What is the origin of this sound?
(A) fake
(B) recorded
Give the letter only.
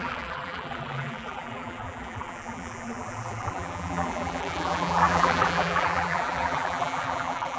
A